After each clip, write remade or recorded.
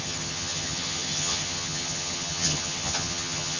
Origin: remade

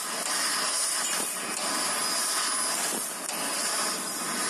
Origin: recorded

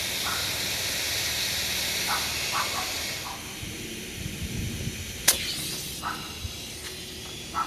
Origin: recorded